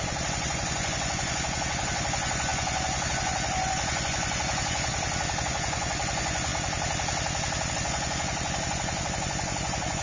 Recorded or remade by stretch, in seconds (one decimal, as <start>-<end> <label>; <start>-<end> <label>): 0.0-4.9 remade; 4.9-5.4 recorded; 5.4-6.5 remade; 6.5-7.7 recorded; 7.7-10.0 remade